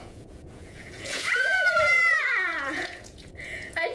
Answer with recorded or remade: remade